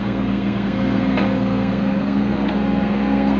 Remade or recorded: remade